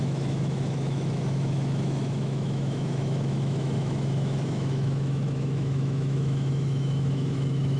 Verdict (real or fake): fake